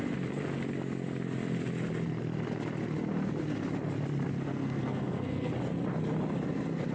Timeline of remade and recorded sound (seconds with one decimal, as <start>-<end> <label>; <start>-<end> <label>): 0.0-4.3 recorded; 4.3-5.5 remade; 5.5-6.9 recorded